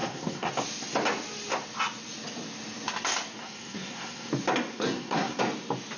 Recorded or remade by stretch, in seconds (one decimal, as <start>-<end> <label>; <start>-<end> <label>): 0.0-0.5 remade; 0.5-3.4 recorded; 3.4-4.3 remade; 4.3-4.7 recorded; 4.7-5.4 remade; 5.4-6.0 recorded